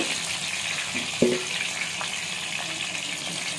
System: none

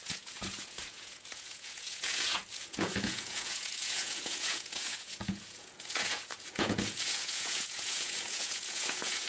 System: vocoder, Vocos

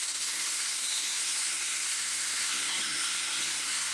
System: codec, SNAC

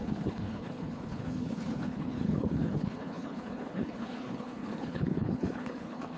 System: codec, HILCodec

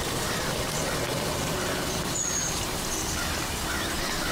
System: none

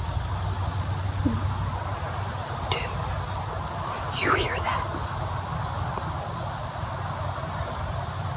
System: none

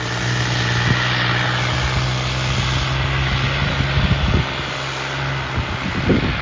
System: none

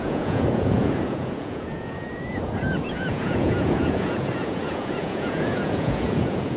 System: vocoder, Vocos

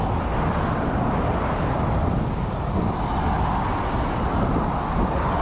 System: none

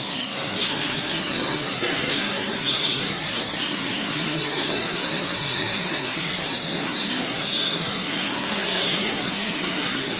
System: codec, SNAC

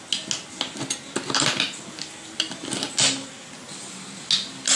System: none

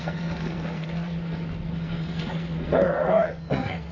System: codec, SNAC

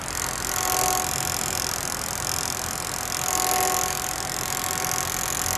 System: none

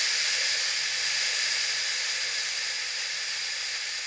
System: none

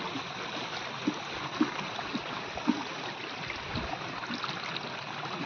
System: none